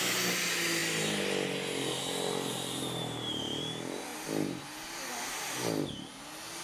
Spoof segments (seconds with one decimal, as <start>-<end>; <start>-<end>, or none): 2.5-3.6